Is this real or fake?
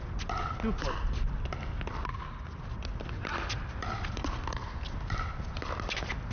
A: real